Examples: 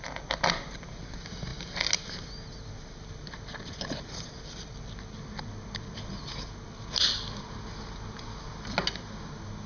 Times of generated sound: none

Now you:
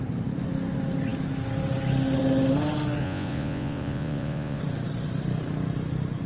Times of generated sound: 3.0-4.6 (vocoder, Vocos)

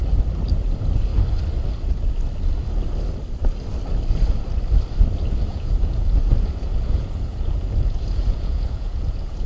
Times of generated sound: 5.5-9.5 (vocoder, Vocos)

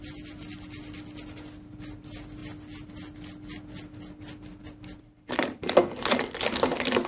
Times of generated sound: none

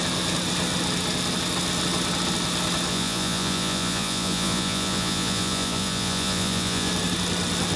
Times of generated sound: 2.9-6.9 (vocoder, Vocos)

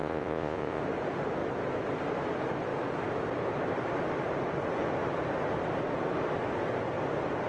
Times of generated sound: 0.0-0.8 (vocoder, Vocos)

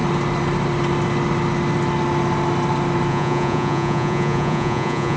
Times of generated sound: 3.1-5.2 (vocoder, Vocos)